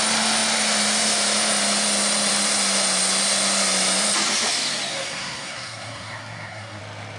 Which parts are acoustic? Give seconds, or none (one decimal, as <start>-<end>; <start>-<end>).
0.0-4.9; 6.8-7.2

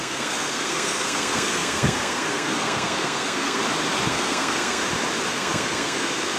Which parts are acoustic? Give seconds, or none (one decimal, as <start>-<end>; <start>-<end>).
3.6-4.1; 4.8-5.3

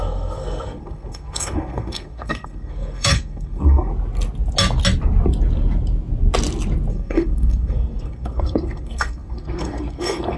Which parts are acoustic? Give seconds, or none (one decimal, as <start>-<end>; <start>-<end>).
3.9-6.9

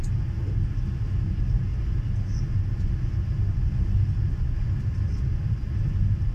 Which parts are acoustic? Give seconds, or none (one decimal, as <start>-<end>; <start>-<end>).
0.0-6.3

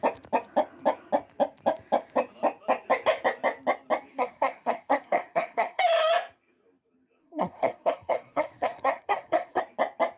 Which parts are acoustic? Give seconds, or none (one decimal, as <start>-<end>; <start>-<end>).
0.0-4.1; 5.8-7.2; 9.6-10.2

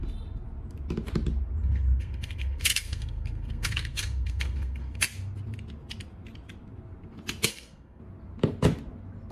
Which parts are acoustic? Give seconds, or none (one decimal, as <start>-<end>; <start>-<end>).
0.0-1.6; 5.0-7.5; 8.0-9.3

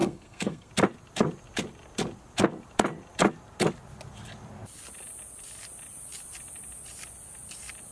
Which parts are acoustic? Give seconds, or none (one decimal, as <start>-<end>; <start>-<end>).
0.7-7.9

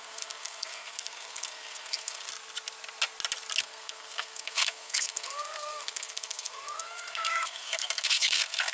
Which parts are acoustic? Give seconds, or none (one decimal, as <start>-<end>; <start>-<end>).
2.3-3.6